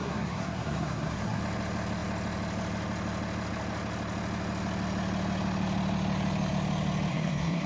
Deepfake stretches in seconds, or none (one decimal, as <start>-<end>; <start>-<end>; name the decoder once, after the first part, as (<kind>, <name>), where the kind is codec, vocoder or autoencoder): 0.0-1.4 (codec, SNAC); 7.1-7.7